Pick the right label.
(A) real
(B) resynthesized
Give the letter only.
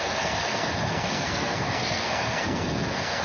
B